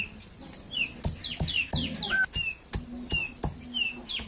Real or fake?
real